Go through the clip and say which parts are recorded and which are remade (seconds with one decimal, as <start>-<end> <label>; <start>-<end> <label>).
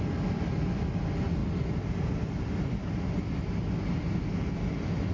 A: 0.0-5.1 recorded